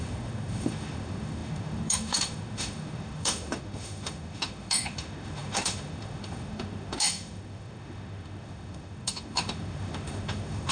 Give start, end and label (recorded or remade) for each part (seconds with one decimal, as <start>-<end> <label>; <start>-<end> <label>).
0.0-10.7 remade